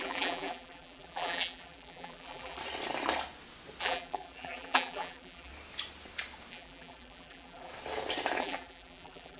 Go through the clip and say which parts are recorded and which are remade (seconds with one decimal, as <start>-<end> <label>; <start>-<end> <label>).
0.0-2.6 remade; 2.6-3.8 recorded; 3.8-5.5 remade; 5.5-6.5 recorded; 6.5-7.7 remade; 7.7-8.4 recorded; 8.4-9.4 remade